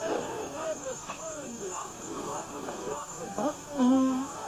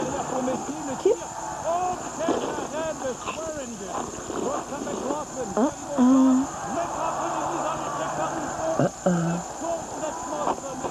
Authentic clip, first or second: second